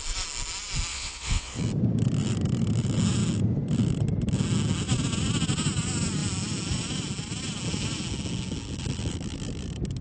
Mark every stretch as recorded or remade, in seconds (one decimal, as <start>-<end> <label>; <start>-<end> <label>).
0.0-0.9 recorded; 0.9-1.6 remade; 1.6-10.0 recorded